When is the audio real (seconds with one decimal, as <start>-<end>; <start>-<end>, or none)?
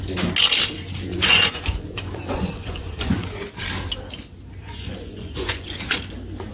0.0-1.1; 3.6-4.6; 6.0-6.5